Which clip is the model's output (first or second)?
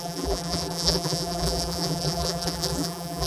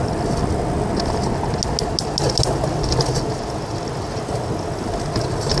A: first